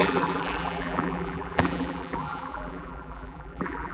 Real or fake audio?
fake